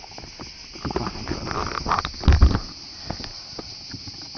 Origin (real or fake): real